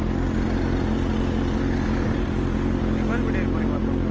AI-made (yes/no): no